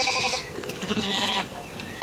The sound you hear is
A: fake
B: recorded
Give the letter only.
A